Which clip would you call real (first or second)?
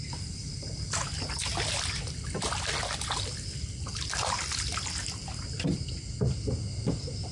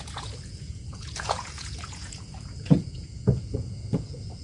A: first